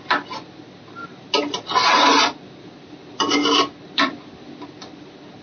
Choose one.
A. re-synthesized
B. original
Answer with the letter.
B